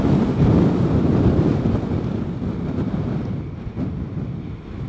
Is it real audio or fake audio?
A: real